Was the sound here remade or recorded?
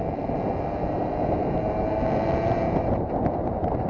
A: remade